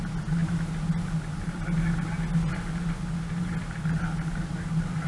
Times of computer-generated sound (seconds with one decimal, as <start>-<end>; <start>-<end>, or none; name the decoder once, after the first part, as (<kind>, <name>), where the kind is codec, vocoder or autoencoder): none